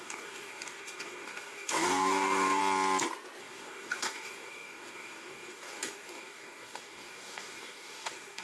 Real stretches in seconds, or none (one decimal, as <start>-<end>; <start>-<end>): 2.6-3.4